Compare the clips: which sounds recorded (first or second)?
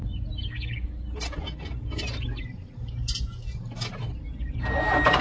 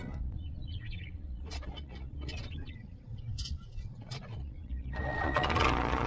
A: first